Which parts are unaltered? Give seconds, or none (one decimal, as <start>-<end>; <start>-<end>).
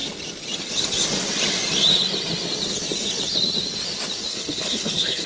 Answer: 0.0-4.3